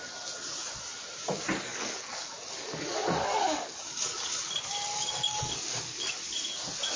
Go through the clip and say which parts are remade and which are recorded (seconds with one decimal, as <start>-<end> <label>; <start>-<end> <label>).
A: 0.0-1.7 recorded; 1.7-4.5 remade; 4.5-4.9 recorded; 4.9-6.3 remade; 6.3-7.0 recorded

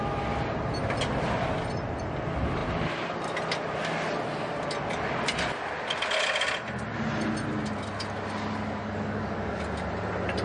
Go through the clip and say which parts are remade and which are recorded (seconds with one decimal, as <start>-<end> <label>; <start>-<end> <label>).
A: 0.0-8.8 recorded; 8.8-9.6 remade; 9.6-10.4 recorded

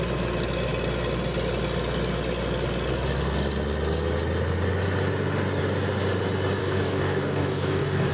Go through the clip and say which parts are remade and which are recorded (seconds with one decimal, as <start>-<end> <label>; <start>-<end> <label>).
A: 0.0-6.6 recorded; 6.6-8.1 remade

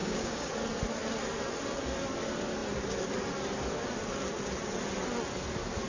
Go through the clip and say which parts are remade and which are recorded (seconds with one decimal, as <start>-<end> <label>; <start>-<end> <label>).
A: 0.0-0.5 remade; 0.5-5.9 recorded